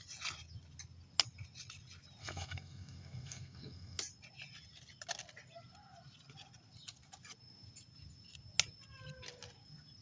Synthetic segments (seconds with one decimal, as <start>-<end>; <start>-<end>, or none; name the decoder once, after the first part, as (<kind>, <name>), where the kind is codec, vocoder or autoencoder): 2.2-4.0 (codec, SNAC)